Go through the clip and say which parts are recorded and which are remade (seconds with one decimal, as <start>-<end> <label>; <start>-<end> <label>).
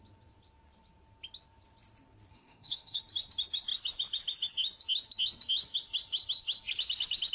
0.0-2.3 recorded; 2.3-3.0 remade; 3.0-7.3 recorded